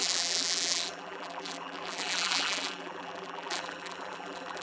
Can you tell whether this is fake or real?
fake